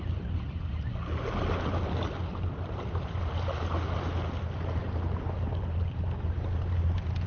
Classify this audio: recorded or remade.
recorded